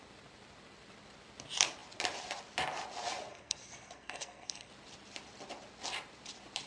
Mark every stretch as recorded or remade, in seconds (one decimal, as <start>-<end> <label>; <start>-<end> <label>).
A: 0.0-3.3 recorded; 3.3-4.7 remade; 4.7-6.7 recorded